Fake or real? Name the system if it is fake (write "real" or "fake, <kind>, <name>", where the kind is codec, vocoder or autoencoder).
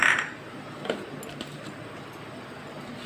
real